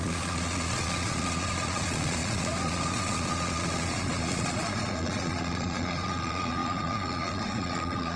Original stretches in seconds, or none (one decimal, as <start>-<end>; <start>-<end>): none